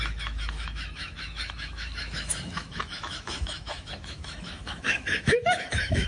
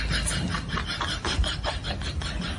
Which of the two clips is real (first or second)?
second